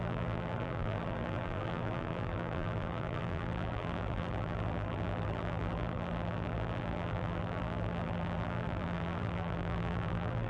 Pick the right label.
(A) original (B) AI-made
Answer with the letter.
B